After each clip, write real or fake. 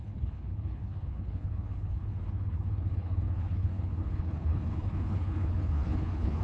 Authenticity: fake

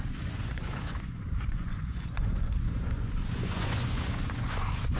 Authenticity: fake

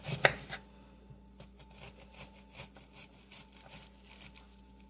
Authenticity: real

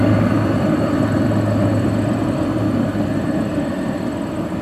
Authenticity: fake